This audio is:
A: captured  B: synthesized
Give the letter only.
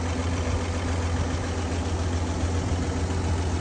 A